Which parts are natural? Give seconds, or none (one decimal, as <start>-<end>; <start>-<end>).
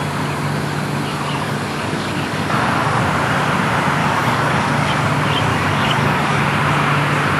0.0-1.1; 3.0-4.0; 5.0-5.5; 6.4-7.4